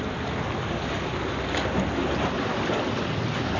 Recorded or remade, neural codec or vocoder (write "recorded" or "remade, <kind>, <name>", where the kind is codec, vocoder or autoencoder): recorded